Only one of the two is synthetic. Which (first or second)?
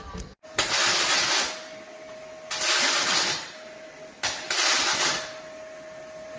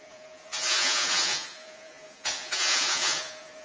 second